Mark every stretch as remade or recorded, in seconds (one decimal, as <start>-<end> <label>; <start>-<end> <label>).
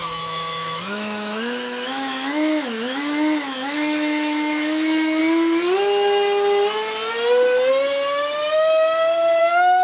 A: 0.0-5.2 remade; 5.2-9.4 recorded; 9.4-9.8 remade